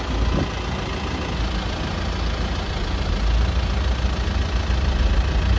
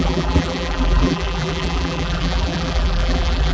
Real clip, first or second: first